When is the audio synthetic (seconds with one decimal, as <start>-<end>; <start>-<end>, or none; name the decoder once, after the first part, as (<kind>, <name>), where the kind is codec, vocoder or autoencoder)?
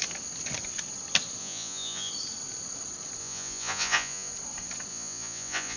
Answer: 1.4-2.1 (vocoder, Vocos); 3.2-4.3; 4.9-5.8